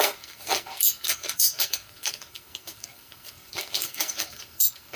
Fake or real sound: fake